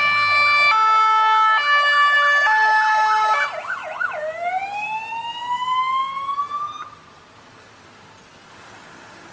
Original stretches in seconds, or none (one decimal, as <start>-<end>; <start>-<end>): 0.0-3.8; 4.5-9.3